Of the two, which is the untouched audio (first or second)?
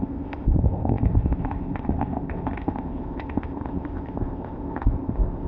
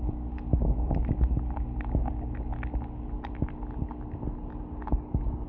second